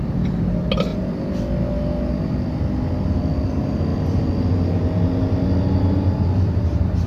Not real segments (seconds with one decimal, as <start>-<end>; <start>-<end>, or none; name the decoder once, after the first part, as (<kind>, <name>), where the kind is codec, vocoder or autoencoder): none